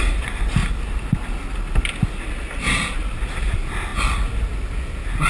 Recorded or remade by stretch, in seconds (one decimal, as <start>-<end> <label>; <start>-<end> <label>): 0.0-5.3 recorded